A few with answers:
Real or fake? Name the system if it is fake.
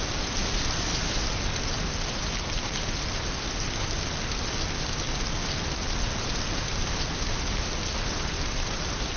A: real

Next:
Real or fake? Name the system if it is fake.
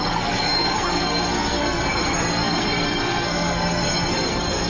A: fake, codec, SNAC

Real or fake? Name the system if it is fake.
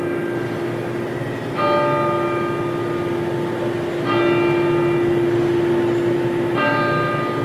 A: real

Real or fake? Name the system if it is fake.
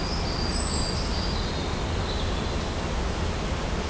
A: real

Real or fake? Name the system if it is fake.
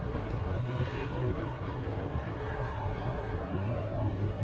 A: fake, codec, SNAC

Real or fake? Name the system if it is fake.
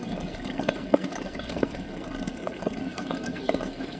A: fake, codec, SNAC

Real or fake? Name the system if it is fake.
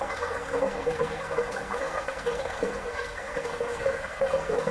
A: fake, codec, SNAC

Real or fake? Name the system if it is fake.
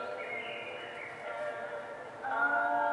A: real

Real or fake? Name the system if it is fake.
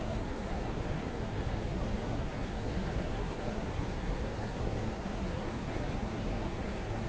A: fake, codec, SNAC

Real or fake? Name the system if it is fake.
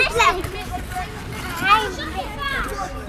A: real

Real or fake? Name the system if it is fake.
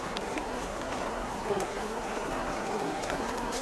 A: fake, codec, SNAC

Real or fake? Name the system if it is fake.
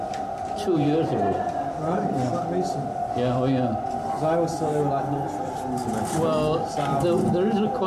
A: real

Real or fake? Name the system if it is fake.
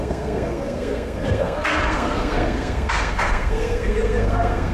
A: fake, codec, SNAC